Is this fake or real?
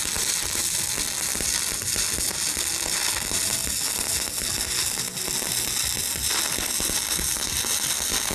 real